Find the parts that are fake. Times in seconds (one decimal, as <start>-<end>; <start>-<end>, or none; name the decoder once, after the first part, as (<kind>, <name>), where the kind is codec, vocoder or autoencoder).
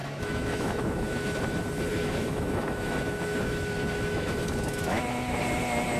0.0-1.4 (autoencoder, DAC-VAE); 1.9-5.4